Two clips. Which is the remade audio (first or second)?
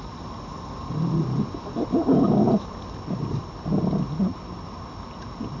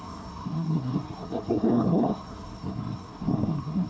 second